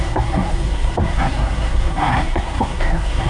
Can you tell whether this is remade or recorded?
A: remade